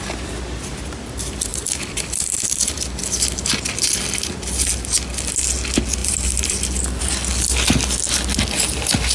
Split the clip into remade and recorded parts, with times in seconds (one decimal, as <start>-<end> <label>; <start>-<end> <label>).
0.0-1.5 recorded; 1.5-3.4 remade; 3.4-6.0 recorded; 6.0-7.0 remade; 7.0-9.1 recorded